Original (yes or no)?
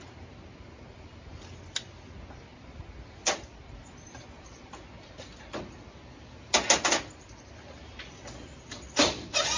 yes